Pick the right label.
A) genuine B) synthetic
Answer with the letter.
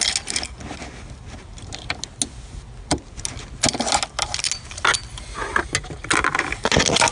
A